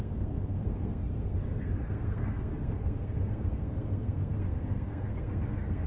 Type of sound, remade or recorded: remade